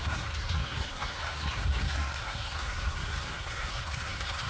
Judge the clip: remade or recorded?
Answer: remade